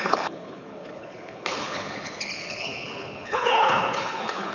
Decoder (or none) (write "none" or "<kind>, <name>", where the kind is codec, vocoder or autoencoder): codec, HILCodec